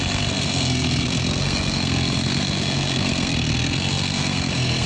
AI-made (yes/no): yes